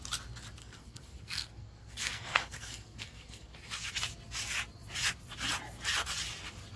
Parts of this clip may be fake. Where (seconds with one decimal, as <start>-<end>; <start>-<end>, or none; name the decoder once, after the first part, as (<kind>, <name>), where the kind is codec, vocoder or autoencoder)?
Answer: 0.6-3.9 (codec, SNAC)